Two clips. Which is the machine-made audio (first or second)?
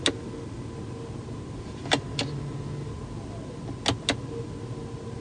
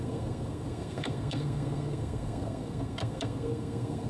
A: second